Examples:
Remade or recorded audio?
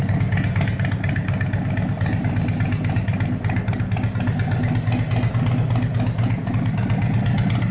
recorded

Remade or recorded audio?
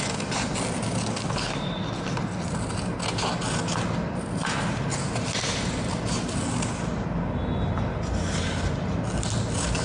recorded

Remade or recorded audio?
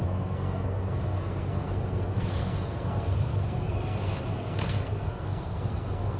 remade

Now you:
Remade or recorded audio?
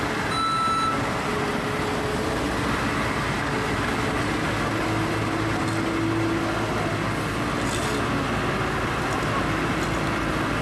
recorded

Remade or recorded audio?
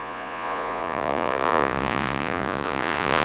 remade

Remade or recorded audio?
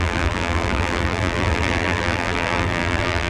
remade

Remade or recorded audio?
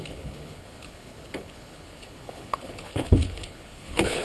remade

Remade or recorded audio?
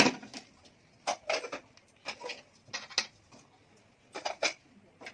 recorded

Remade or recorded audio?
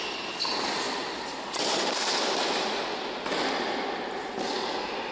recorded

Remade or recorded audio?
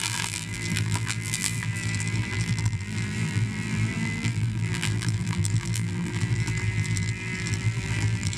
remade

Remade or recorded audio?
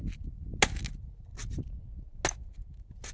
recorded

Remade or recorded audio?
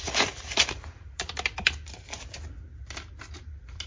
recorded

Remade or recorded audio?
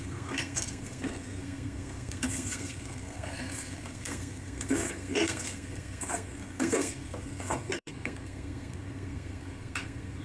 remade